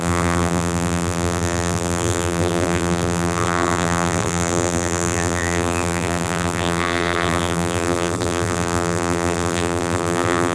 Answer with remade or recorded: remade